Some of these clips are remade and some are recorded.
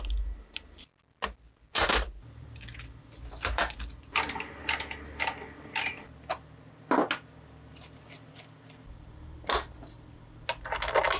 recorded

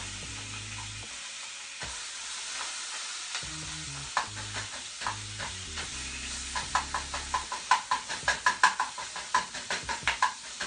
recorded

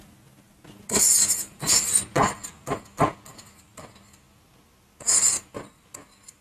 recorded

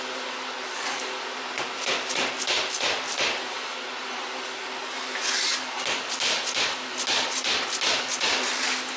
recorded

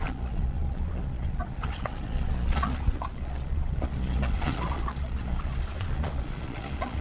remade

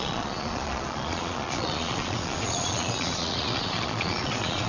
remade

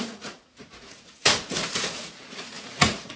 remade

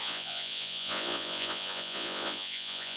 remade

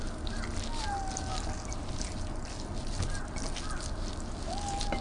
recorded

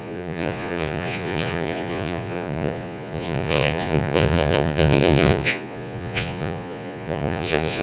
remade